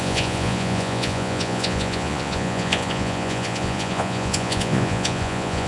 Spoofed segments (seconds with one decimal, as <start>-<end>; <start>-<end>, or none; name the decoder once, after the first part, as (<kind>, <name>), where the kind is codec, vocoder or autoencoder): 0.0-5.7 (vocoder, Vocos)